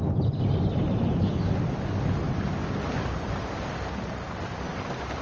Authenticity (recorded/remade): recorded